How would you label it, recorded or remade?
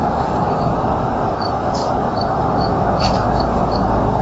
remade